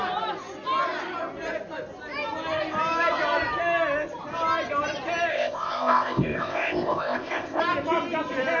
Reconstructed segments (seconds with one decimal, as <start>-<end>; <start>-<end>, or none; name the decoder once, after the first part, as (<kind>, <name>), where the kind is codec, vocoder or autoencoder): 5.3-7.6 (codec, ZipCodec)